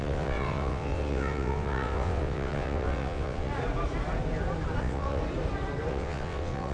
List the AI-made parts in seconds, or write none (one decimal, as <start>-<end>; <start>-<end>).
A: 0.0-3.5; 4.8-5.2; 5.9-6.7